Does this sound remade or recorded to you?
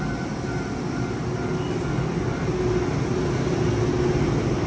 recorded